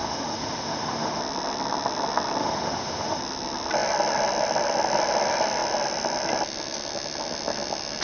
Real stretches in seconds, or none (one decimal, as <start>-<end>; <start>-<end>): 1.2-2.4; 3.2-8.0